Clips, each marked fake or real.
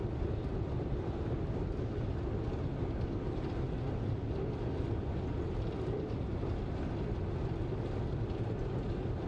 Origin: real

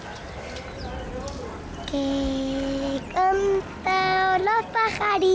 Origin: real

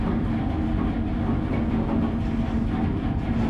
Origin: real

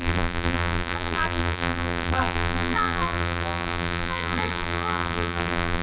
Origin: fake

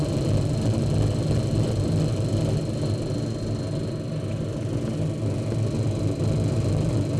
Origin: real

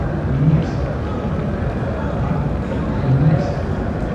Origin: real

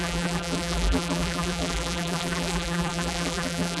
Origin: fake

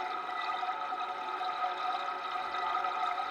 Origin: real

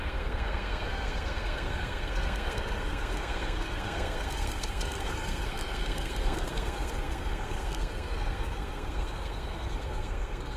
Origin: fake